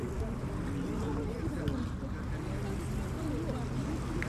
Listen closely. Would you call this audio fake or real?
real